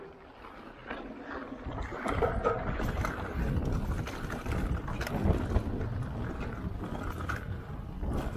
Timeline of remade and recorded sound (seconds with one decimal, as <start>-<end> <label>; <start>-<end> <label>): 0.0-0.8 recorded; 0.8-5.0 remade; 5.0-8.4 recorded